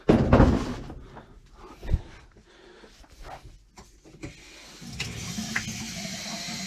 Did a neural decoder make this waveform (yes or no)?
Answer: no